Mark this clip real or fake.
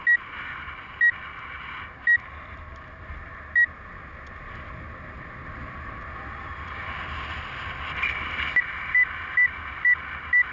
real